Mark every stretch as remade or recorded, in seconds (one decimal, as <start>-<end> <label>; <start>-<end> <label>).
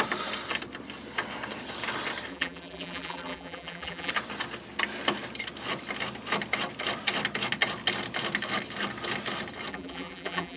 0.0-2.3 recorded; 2.3-4.1 remade; 4.1-9.7 recorded; 9.7-10.6 remade